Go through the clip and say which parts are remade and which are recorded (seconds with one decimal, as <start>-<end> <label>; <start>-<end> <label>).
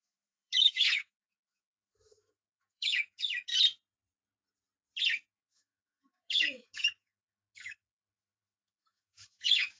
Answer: 0.0-3.5 remade; 3.5-5.3 recorded; 5.3-9.8 remade